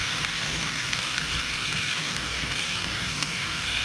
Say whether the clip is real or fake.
fake